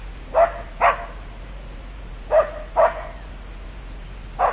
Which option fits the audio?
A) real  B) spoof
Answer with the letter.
A